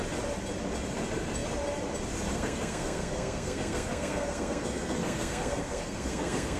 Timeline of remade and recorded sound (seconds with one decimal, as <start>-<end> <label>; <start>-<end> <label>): 0.0-2.3 recorded; 2.3-6.6 remade